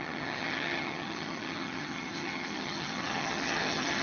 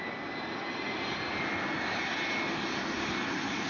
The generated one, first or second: first